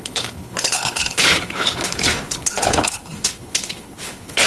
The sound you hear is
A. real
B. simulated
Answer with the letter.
B